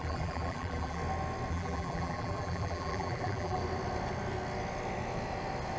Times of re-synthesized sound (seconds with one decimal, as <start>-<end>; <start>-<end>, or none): 0.0-1.0; 1.5-3.6